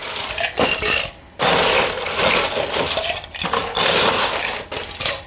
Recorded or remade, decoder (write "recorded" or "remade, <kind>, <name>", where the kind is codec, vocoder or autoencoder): recorded